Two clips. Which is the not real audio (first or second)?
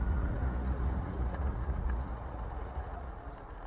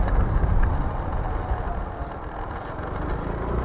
first